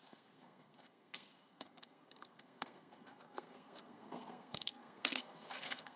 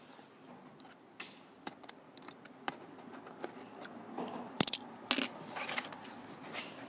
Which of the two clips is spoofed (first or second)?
first